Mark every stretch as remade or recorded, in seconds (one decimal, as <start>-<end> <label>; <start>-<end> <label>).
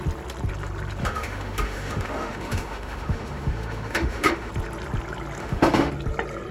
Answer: 0.0-1.0 recorded; 1.0-4.5 remade; 4.5-5.4 recorded; 5.4-5.9 remade; 5.9-6.5 recorded